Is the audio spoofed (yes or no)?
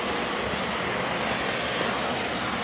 no